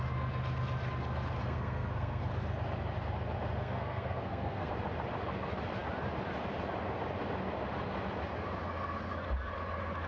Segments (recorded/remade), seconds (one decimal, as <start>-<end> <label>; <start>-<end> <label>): 0.0-1.4 recorded; 1.4-2.2 remade; 2.2-3.6 recorded; 3.6-4.7 remade; 4.7-10.1 recorded